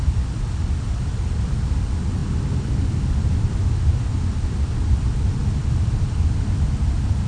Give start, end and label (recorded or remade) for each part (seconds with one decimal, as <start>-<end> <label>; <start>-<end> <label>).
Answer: 0.0-7.3 recorded